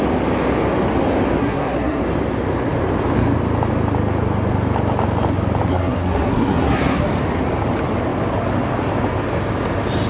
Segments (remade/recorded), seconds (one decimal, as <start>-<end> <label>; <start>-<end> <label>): 0.0-1.4 recorded; 1.4-2.0 remade; 2.0-5.7 recorded; 5.7-7.0 remade; 7.0-10.1 recorded